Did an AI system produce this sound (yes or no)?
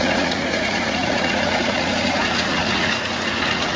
yes